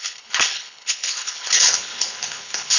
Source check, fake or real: fake